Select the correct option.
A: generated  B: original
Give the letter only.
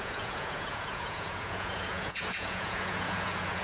A